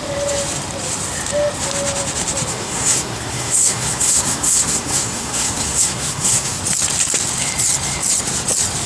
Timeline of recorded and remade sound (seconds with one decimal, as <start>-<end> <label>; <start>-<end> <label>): 0.0-2.5 recorded; 2.5-6.6 remade; 6.6-8.9 recorded